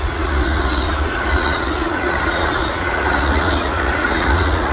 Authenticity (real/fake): fake